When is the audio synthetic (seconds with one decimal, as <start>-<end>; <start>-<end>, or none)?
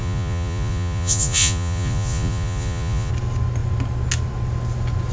0.0-3.1